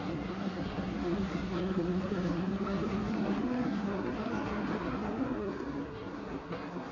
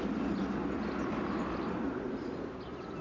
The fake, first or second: first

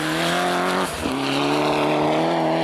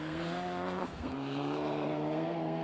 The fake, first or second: second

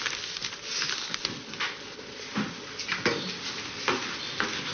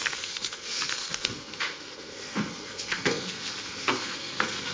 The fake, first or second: second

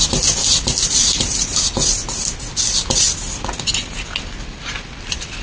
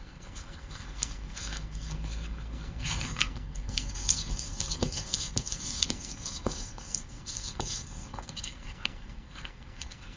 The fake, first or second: second